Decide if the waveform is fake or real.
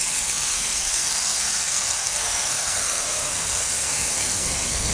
fake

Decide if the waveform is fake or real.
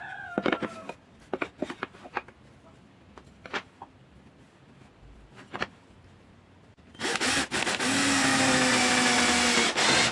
real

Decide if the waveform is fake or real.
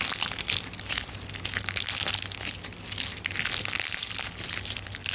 real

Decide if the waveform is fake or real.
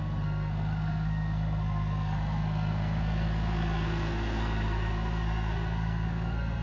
fake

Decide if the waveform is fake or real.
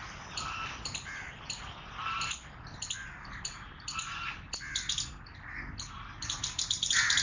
real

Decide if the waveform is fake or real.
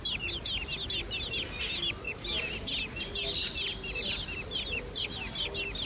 real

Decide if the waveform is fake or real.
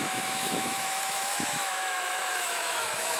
fake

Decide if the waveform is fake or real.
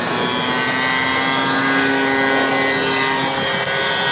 real